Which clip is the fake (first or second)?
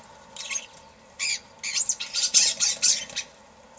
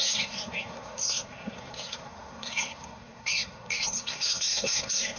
second